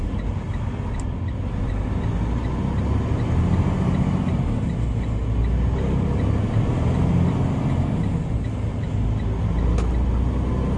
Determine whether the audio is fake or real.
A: real